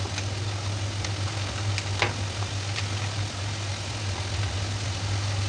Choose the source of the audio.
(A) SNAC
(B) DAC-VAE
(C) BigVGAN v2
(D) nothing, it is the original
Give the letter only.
D